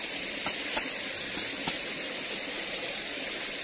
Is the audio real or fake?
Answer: real